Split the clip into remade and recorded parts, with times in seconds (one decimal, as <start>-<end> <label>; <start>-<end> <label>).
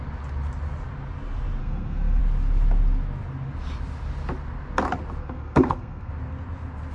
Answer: 0.0-1.6 recorded; 1.6-2.2 remade; 2.2-5.2 recorded; 5.2-6.1 remade; 6.1-6.9 recorded